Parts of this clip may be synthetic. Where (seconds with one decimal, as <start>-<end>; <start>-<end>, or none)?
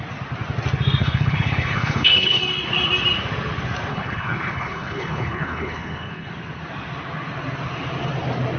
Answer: 1.0-2.4; 3.9-6.3